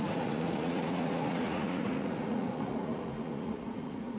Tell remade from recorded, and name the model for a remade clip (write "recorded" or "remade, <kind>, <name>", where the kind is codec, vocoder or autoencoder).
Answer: remade, vocoder, Vocos